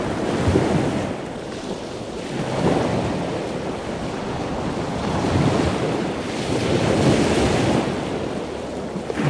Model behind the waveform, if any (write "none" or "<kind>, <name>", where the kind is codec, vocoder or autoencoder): none